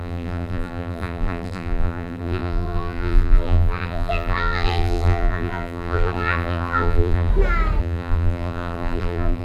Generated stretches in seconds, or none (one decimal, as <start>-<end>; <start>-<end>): 0.0-7.3; 7.8-9.4